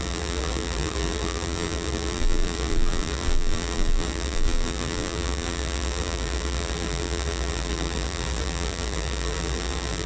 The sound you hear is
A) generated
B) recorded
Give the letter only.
A